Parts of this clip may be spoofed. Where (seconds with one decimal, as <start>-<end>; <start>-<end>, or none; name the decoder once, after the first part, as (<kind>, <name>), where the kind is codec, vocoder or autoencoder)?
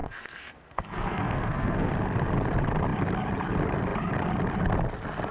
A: 0.0-1.9 (codec, SNAC)